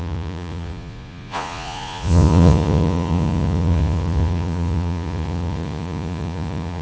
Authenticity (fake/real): fake